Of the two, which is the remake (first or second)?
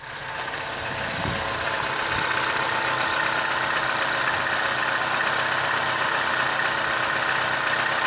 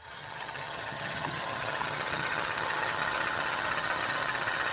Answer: second